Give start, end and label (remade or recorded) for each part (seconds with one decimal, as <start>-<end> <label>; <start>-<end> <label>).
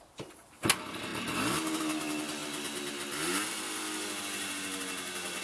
0.0-5.4 recorded